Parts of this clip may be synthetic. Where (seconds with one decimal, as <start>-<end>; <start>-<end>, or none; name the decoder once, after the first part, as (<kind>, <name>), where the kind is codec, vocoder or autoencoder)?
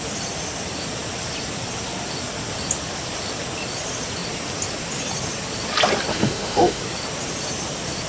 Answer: 6.1-6.8 (autoencoder, DAC-VAE)